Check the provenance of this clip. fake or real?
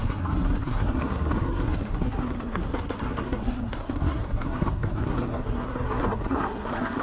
fake